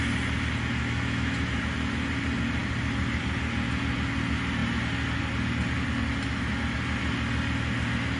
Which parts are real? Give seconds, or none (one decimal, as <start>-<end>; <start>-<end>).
0.0-0.8; 1.6-8.2